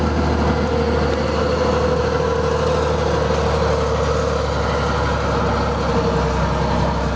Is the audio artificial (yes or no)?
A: no